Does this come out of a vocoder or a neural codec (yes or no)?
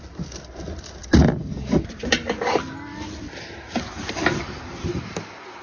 no